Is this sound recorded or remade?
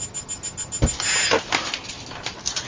recorded